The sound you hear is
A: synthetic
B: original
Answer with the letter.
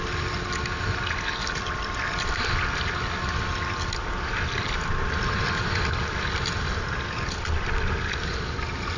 B